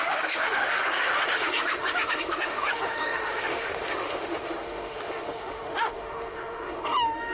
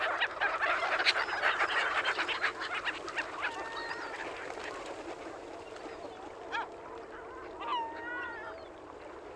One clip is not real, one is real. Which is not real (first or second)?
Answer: first